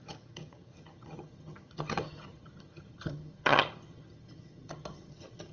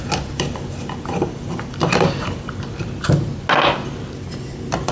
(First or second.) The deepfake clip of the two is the first